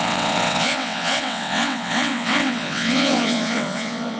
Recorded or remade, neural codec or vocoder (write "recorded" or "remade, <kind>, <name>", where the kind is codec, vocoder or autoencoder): remade, vocoder, WaveNeXt